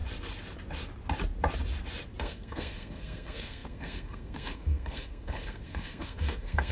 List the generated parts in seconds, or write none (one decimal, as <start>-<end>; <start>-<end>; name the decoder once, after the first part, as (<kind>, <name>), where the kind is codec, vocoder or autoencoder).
2.2-6.7 (codec, SNAC)